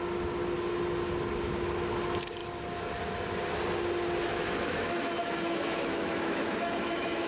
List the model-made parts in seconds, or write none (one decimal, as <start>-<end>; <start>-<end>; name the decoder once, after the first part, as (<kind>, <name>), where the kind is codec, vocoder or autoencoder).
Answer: 4.3-7.3 (autoencoder, DAC-VAE)